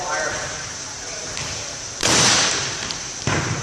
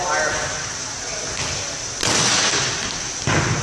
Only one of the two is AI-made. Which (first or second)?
first